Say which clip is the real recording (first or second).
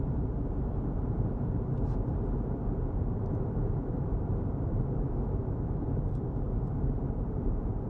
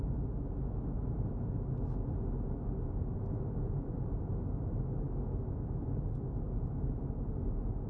second